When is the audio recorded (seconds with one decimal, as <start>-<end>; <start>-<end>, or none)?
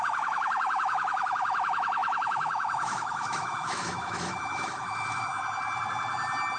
5.3-6.6